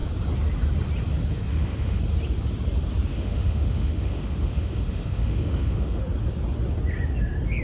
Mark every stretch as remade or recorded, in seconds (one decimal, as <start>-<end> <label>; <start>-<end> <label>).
0.0-1.5 recorded; 1.5-2.0 remade; 2.0-3.1 recorded; 3.1-6.0 remade; 6.0-7.6 recorded